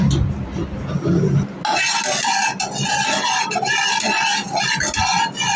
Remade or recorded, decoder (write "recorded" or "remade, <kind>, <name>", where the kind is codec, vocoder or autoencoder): recorded